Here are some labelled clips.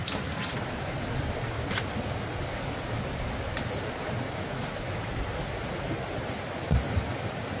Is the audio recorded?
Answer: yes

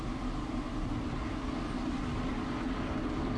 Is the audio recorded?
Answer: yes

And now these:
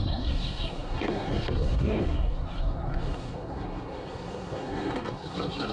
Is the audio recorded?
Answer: no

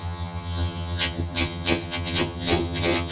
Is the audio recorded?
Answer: no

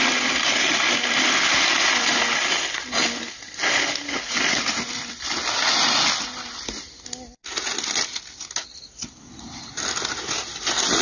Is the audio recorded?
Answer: yes